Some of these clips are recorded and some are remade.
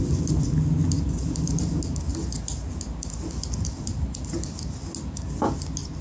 recorded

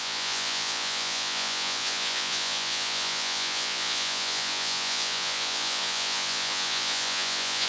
remade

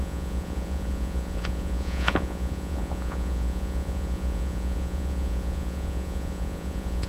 remade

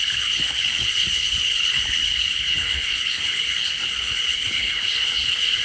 remade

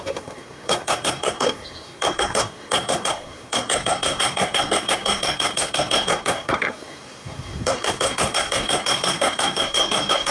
remade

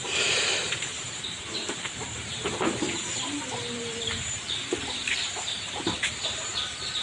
remade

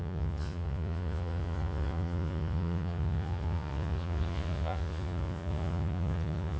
remade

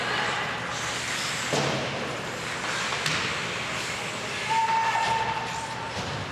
recorded